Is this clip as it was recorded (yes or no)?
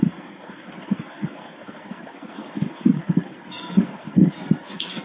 no